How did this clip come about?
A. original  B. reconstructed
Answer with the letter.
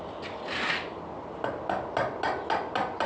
A